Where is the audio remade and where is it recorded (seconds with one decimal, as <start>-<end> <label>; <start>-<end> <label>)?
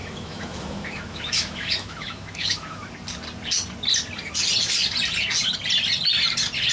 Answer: 0.0-2.9 remade; 2.9-6.7 recorded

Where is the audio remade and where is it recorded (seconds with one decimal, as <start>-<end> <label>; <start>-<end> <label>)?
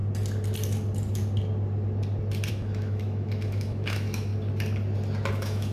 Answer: 0.0-2.5 recorded; 2.5-4.3 remade; 4.3-5.3 recorded; 5.3-5.7 remade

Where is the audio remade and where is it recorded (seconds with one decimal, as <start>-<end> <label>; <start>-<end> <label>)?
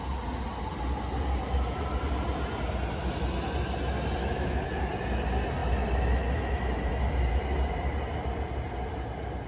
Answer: 0.0-4.2 recorded; 4.2-4.9 remade; 4.9-9.5 recorded